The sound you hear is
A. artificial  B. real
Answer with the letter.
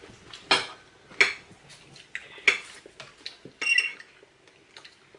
B